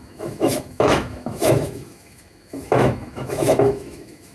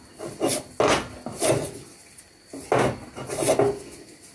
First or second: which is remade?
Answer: first